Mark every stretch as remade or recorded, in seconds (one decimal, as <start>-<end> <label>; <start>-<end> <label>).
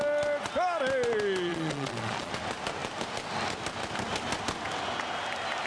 0.0-1.5 recorded; 1.5-2.3 remade; 2.3-5.7 recorded